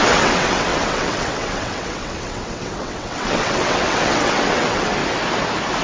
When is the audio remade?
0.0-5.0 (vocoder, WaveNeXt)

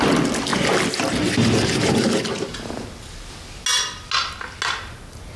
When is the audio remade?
none

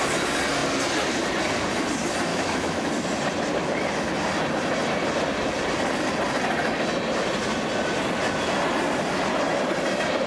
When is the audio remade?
2.3-2.9 (autoencoder, DAC-VAE)

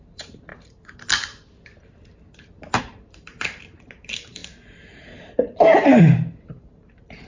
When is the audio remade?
0.0-0.5 (vocoder, BigVGAN v2); 2.8-4.4; 6.0-7.3

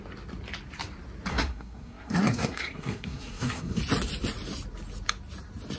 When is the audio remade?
1.3-3.8 (codec, SNAC)

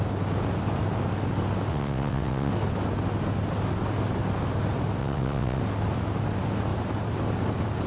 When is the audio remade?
1.7-2.5 (vocoder, WaveNeXt); 5.0-5.6